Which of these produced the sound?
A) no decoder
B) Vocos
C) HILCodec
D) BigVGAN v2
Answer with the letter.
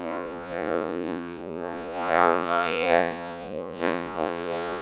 B